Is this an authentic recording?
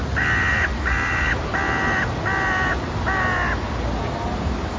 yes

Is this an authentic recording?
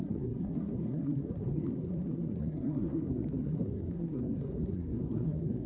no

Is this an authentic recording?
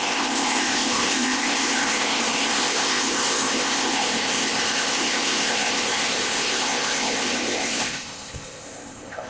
no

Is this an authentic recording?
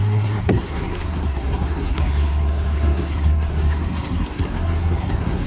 no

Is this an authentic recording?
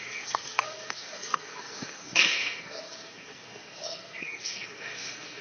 no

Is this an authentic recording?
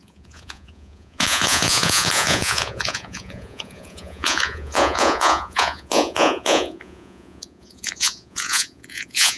no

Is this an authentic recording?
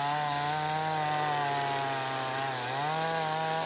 yes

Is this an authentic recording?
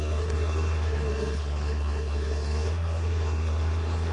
no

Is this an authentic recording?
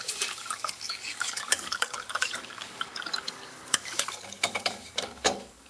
no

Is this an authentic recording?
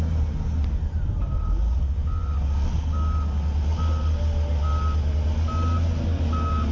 yes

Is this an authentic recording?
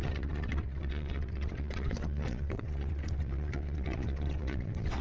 no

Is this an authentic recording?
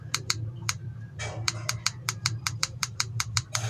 no